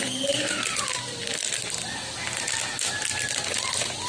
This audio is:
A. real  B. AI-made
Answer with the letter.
A